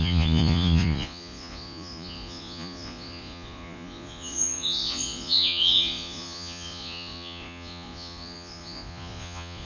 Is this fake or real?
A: fake